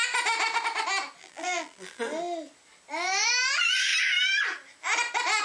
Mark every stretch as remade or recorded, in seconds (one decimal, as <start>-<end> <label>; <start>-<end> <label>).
0.0-1.2 recorded; 1.2-2.0 remade; 2.0-5.4 recorded